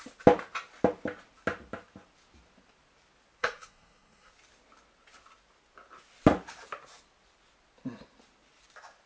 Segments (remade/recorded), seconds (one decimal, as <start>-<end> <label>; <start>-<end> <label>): 0.0-3.4 recorded; 3.4-4.3 remade; 4.3-9.1 recorded